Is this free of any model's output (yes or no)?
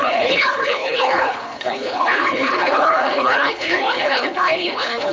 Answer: no